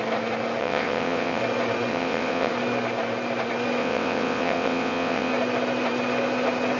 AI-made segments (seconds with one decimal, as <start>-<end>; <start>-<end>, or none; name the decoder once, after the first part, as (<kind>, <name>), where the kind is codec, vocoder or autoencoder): 0.6-1.4 (vocoder, WaveNeXt); 1.9-2.5; 3.8-5.3